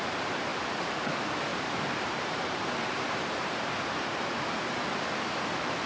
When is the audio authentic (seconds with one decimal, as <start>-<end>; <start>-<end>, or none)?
0.0-0.5; 1.0-1.5; 3.6-4.1; 4.8-5.9